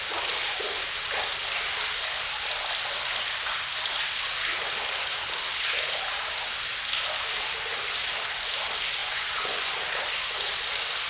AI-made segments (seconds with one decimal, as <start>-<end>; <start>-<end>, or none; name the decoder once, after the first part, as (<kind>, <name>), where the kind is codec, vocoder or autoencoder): 9.0-9.7 (vocoder, Vocos)